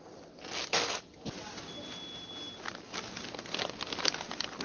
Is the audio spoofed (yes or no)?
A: no